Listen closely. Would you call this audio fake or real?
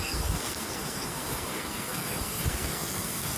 fake